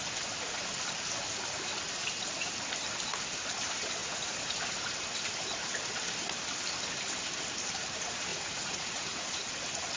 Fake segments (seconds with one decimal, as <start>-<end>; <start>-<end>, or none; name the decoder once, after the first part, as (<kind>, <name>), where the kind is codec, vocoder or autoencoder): 4.0-4.7 (vocoder, Vocos); 8.3-9.4